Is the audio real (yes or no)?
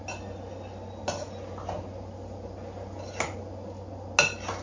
yes